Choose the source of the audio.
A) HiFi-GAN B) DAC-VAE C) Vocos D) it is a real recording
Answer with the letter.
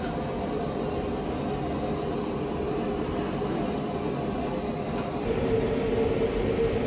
D